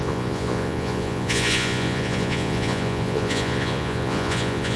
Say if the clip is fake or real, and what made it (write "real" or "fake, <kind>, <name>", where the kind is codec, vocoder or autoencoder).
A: fake, vocoder, Vocos